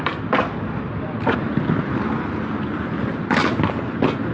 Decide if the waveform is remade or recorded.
recorded